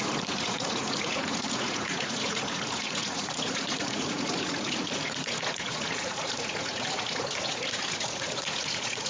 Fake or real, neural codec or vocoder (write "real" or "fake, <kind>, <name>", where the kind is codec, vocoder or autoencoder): fake, vocoder, Vocos